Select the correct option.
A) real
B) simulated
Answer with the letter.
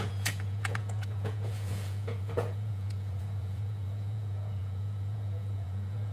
B